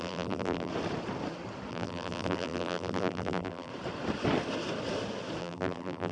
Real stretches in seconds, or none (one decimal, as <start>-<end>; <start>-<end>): 0.7-1.7; 3.7-5.4